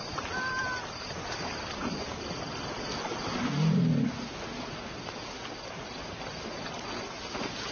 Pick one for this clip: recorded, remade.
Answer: recorded